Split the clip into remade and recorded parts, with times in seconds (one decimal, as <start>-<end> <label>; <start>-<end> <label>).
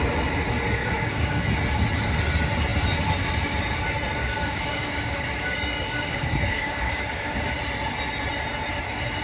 0.0-0.8 recorded; 0.8-1.4 remade; 1.4-4.2 recorded; 4.2-7.5 remade; 7.5-9.2 recorded